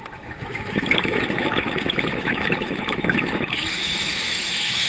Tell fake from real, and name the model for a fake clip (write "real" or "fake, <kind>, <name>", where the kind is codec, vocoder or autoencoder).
fake, autoencoder, DAC-VAE